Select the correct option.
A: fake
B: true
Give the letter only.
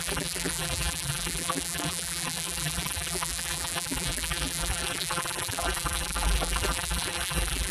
A